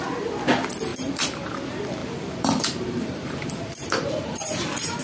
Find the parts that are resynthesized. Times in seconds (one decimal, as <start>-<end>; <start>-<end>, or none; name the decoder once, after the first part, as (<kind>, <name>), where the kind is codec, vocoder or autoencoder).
0.9-1.5 (vocoder, BigVGAN v2); 2.0-5.0